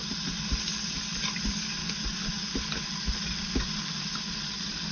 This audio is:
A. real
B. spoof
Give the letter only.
A